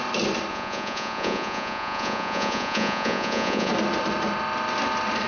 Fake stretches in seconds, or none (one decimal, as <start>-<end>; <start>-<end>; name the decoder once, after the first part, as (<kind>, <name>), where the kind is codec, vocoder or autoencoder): 0.5-3.7 (vocoder, Vocos)